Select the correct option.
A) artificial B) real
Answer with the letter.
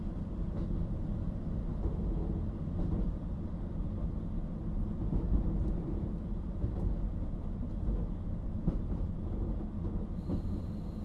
B